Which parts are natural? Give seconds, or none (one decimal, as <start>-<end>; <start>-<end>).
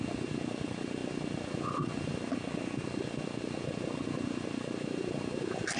0.0-5.8